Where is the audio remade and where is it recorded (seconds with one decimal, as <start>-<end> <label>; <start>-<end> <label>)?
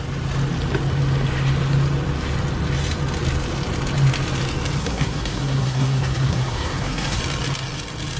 0.0-4.8 recorded; 4.8-7.2 remade; 7.2-8.2 recorded